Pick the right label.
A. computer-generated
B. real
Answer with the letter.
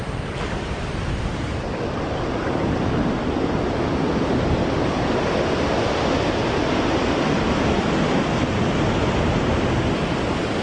B